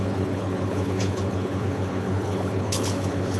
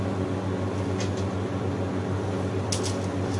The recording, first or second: second